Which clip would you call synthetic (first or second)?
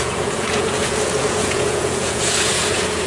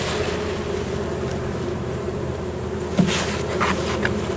first